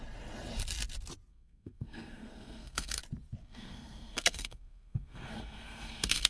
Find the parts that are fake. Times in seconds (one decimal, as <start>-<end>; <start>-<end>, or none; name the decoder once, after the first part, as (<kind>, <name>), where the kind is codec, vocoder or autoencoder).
1.3-3.0 (codec, SNAC); 3.4-6.3